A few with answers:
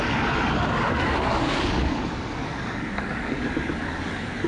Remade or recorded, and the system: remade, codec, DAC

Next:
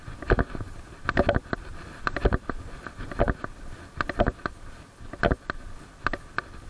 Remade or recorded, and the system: recorded